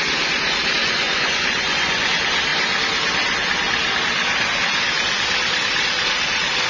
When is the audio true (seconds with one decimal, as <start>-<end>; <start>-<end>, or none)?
0.0-0.8; 2.1-6.7